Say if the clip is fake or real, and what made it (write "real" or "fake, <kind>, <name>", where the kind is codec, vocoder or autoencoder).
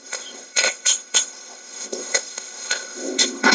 fake, codec, ZipCodec